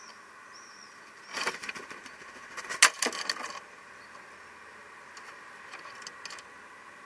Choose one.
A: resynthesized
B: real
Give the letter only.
B